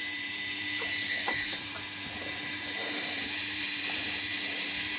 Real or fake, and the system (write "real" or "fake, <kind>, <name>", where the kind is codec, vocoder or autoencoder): fake, vocoder, BigVGAN v2